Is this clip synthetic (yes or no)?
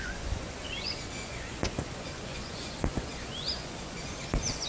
yes